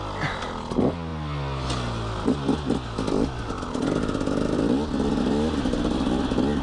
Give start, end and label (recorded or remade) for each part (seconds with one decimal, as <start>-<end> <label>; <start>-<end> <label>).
0.0-6.6 recorded